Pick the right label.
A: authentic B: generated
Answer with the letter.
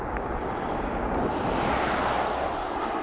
A